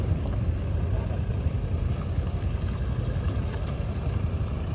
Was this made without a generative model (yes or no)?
yes